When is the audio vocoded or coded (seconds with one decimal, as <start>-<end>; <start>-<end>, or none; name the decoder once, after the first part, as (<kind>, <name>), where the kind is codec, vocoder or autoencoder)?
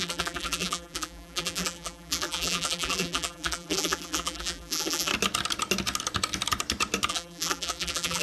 0.0-5.1 (vocoder, BigVGAN v2); 7.1-8.2